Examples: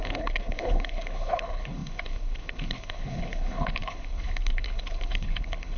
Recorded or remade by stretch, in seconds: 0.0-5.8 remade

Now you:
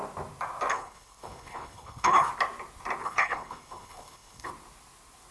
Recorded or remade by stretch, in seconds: 0.0-0.7 recorded; 0.7-2.3 remade; 2.3-3.0 recorded; 3.0-4.5 remade; 4.5-5.3 recorded

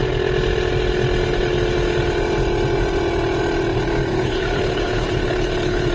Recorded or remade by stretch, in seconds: 0.0-4.1 recorded; 4.1-5.9 remade

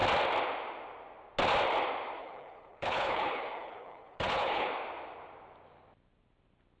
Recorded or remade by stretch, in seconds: 0.0-2.2 recorded; 2.2-4.7 remade; 4.7-6.8 recorded

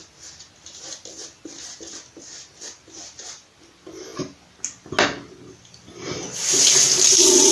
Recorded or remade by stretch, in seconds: 0.0-7.5 recorded

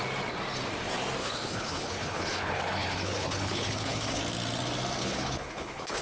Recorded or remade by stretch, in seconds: 0.0-1.2 recorded; 1.2-4.2 remade; 4.2-5.0 recorded; 5.0-6.0 remade